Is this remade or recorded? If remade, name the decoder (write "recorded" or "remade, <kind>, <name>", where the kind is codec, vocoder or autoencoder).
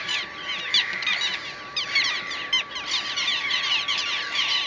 remade, vocoder, BigVGAN v2